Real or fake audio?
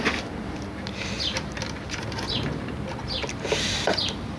real